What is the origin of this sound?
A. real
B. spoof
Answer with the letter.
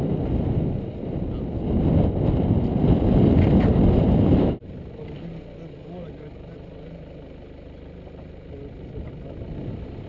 A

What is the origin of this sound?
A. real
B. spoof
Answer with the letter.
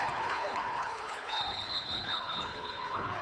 B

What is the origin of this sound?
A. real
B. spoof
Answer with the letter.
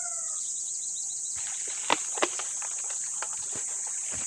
A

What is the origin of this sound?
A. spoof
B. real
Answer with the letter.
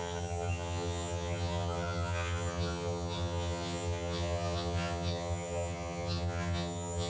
A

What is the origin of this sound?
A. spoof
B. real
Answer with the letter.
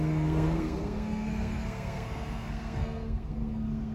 A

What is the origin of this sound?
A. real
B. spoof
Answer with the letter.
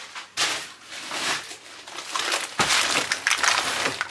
A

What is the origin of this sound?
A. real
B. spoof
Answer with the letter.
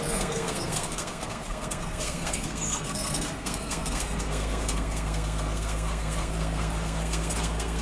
B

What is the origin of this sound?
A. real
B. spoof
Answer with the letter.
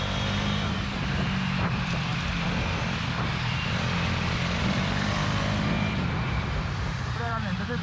B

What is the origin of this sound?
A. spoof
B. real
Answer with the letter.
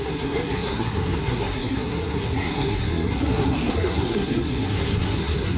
A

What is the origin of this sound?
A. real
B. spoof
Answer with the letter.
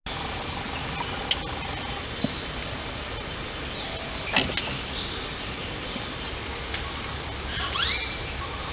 A